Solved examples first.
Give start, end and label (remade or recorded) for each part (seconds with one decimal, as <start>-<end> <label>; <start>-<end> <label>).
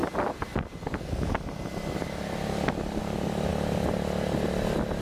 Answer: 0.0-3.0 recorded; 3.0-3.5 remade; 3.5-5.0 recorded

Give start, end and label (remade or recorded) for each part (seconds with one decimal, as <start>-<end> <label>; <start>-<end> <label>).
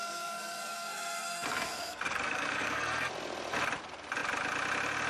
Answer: 0.0-3.1 remade; 3.1-5.1 recorded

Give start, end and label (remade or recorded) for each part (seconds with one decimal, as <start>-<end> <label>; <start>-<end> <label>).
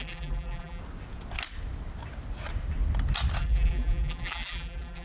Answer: 0.0-0.8 remade; 0.8-3.4 recorded; 3.4-5.0 remade